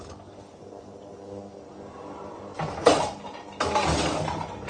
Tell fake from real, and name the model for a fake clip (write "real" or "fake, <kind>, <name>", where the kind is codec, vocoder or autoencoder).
real